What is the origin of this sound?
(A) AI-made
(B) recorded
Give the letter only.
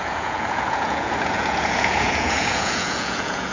A